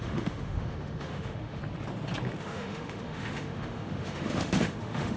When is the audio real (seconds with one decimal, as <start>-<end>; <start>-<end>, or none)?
1.6-2.4